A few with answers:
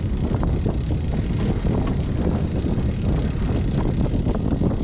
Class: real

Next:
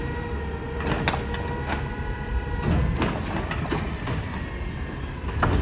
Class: real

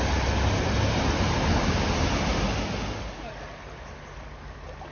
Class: real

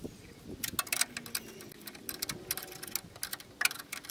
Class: real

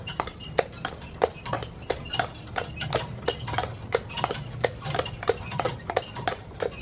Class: real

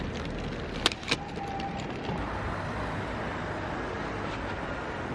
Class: real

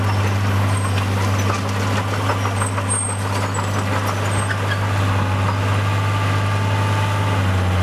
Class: real